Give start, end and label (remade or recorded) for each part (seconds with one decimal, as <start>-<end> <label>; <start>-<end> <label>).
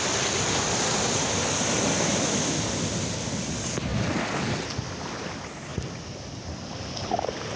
0.0-7.6 recorded